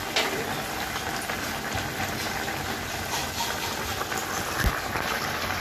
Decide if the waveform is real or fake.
real